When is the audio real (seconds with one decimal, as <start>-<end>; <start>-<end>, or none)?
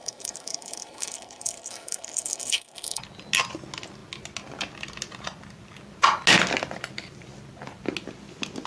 3.0-8.7